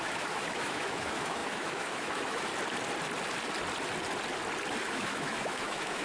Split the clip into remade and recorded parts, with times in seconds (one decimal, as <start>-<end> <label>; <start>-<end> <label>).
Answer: 0.0-2.5 remade; 2.5-4.8 recorded; 4.8-6.0 remade